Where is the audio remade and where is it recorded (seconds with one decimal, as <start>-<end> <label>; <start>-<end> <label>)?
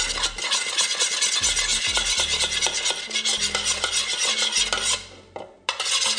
0.0-6.2 recorded